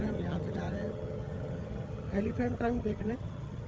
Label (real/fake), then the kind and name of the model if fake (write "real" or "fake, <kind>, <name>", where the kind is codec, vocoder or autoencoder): fake, vocoder, HiFi-GAN